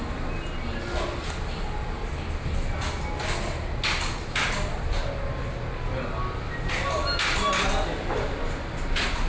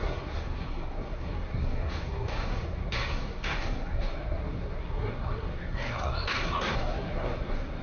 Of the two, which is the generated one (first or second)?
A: second